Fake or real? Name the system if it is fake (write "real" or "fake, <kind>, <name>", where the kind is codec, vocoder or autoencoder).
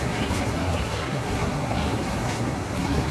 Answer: fake, codec, SNAC